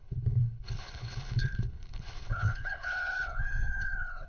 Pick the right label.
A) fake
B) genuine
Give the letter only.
A